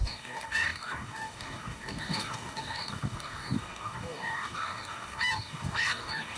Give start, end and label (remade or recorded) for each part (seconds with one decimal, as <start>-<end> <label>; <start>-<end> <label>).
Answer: 0.0-6.4 remade